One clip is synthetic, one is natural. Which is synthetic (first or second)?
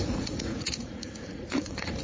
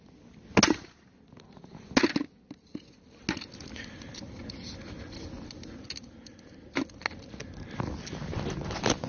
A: first